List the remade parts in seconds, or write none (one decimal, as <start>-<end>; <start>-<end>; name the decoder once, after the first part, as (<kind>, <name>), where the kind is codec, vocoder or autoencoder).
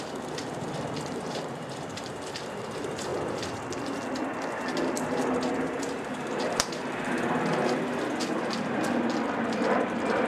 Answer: 0.0-3.1 (vocoder, BigVGAN v2); 6.1-6.8; 9.5-10.3